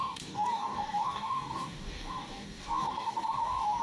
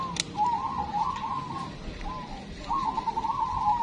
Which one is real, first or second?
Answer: second